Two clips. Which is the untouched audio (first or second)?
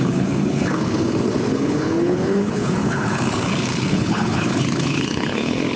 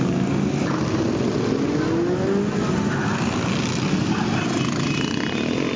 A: second